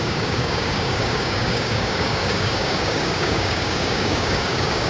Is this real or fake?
fake